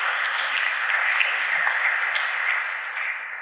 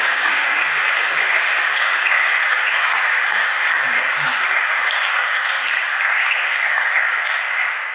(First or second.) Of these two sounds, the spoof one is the second